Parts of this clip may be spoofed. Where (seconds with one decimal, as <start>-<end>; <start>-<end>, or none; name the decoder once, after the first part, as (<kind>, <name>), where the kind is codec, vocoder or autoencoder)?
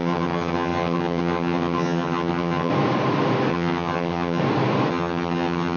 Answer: 0.0-2.7 (vocoder, HiFi-GAN); 3.5-4.4; 4.9-5.8